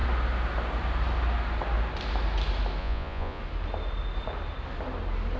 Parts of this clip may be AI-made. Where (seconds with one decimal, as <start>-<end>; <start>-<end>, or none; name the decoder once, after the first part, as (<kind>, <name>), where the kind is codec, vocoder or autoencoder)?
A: 2.8-3.4 (vocoder, Vocos)

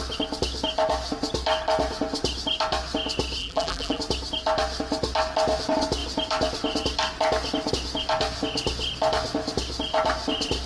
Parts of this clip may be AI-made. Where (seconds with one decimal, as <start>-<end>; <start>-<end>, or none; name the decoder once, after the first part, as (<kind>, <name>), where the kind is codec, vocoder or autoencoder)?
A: 3.4-4.0 (vocoder, BigVGAN v2)

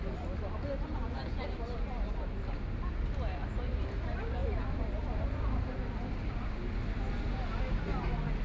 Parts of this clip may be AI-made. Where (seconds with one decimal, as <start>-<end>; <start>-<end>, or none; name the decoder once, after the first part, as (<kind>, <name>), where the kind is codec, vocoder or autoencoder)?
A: 0.9-1.4 (vocoder, Vocos)

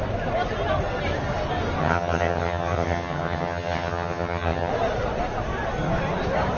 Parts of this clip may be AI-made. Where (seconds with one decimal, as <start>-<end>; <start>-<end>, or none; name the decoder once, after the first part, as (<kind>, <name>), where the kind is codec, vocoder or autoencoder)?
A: 1.8-4.7 (vocoder, HiFi-GAN)

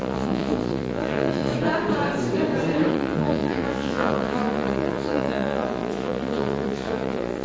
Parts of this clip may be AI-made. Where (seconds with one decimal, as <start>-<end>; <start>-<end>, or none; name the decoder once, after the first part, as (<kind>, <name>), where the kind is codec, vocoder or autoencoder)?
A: 0.0-1.5 (vocoder, Vocos); 2.9-7.4

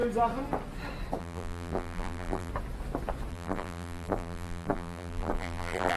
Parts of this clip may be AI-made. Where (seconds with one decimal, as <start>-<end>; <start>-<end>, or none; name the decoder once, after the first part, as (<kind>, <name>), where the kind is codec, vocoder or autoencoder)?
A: 1.2-2.5 (vocoder, BigVGAN v2); 3.3-6.0